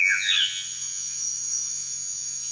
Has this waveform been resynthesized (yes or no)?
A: yes